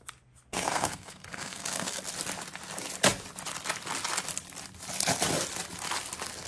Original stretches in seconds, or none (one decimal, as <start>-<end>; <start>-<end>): 0.0-0.5; 2.0-6.5